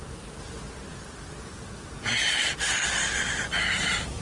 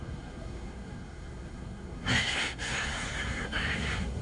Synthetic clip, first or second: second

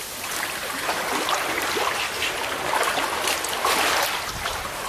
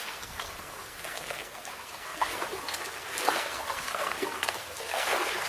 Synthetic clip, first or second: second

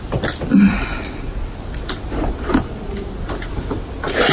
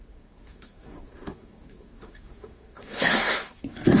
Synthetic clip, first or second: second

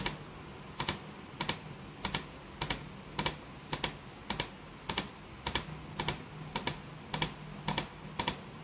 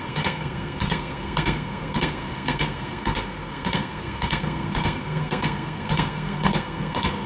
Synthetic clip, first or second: second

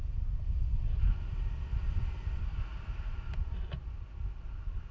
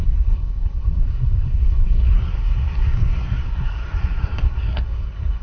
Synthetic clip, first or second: second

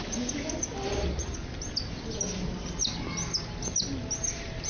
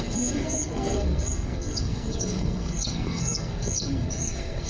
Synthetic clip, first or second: second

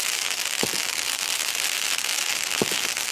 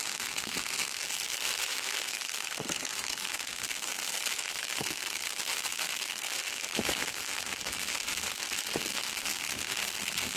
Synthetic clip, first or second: second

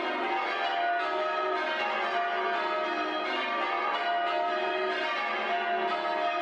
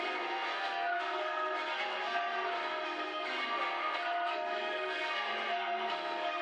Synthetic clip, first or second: second